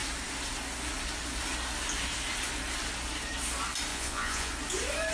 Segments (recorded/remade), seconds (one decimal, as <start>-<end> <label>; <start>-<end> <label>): 0.0-3.9 recorded; 3.9-4.5 remade; 4.5-5.1 recorded